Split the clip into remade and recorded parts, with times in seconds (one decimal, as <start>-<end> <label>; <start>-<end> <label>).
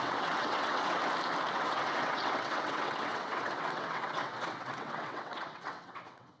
0.0-1.0 remade; 1.0-1.5 recorded; 1.5-6.4 remade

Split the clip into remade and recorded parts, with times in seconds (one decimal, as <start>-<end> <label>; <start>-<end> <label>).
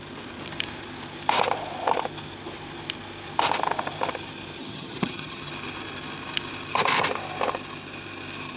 0.0-4.6 recorded; 4.6-5.5 remade; 5.5-8.6 recorded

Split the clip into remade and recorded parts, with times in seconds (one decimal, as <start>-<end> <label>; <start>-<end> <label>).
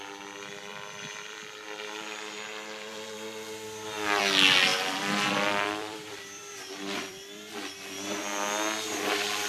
0.0-0.7 recorded; 0.7-4.2 remade; 4.2-4.7 recorded; 4.7-7.5 remade; 7.5-9.5 recorded